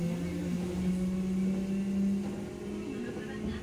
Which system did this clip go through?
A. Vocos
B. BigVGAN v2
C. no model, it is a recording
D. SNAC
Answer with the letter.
C